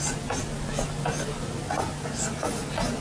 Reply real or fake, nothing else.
real